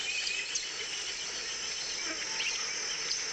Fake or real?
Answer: real